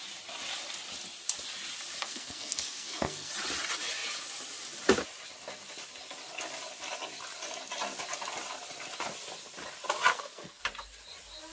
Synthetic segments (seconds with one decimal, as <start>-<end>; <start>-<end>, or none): 2.0-3.3; 10.1-10.6